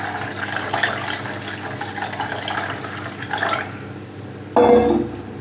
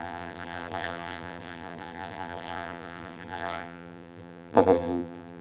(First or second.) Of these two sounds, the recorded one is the first